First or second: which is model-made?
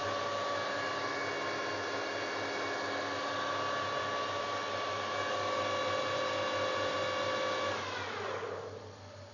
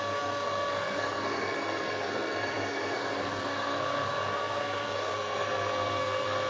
second